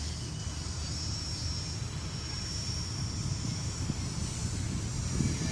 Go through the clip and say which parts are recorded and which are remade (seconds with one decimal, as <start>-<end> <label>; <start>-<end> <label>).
0.0-5.5 recorded